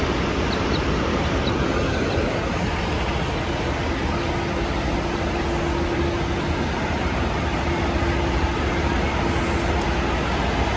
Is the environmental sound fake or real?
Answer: real